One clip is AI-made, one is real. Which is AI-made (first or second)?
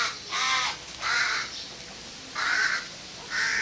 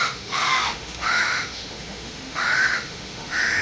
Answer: second